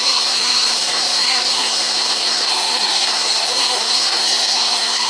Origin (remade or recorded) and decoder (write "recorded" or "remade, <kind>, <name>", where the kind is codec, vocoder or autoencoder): remade, codec, SNAC